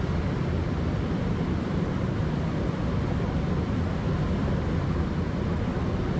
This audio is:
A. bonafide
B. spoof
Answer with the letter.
A